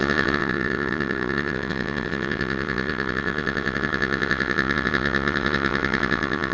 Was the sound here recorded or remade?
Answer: remade